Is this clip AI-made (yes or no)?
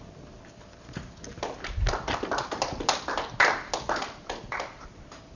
no